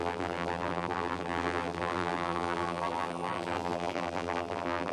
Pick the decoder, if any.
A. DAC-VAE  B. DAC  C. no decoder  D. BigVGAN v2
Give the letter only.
D